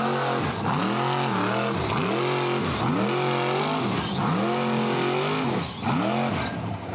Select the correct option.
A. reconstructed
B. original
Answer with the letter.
B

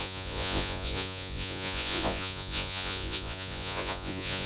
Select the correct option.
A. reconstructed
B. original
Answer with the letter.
A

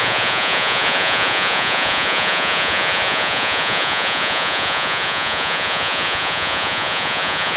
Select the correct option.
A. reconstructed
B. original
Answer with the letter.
A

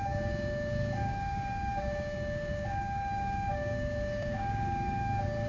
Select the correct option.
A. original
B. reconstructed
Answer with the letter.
B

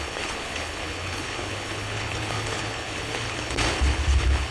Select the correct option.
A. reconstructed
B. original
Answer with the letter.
A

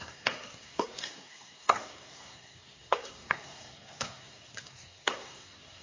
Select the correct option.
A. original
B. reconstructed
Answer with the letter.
B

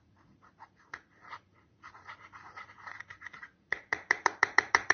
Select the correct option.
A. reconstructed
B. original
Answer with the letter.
A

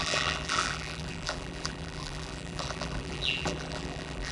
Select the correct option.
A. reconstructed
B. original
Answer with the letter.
A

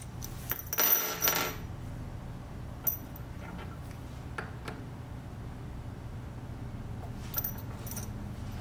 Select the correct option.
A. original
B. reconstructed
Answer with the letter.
A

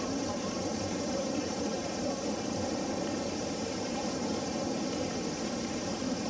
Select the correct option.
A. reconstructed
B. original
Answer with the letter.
A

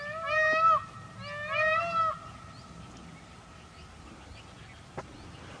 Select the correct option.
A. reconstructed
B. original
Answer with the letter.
B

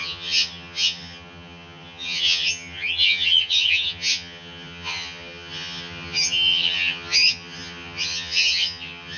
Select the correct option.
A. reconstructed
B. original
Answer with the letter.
A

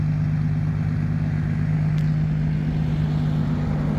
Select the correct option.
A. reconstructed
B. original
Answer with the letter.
B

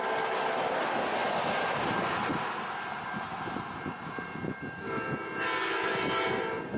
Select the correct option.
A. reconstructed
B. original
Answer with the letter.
B